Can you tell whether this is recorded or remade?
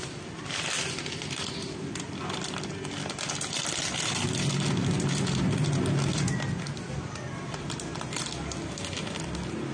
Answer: recorded